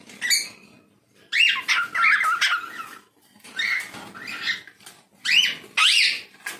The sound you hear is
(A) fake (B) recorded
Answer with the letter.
B